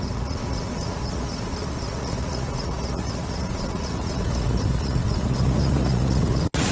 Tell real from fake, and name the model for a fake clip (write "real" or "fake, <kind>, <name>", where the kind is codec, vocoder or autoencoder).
fake, vocoder, Vocos